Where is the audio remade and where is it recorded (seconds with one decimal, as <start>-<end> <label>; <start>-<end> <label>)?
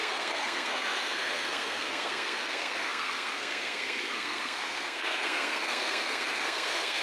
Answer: 0.0-7.0 remade